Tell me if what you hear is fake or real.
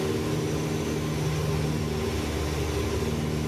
real